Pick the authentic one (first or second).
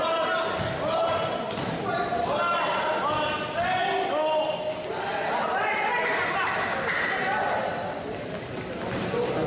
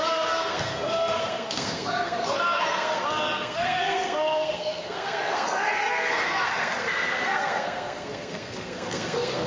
first